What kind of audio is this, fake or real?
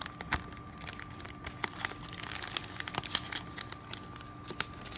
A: real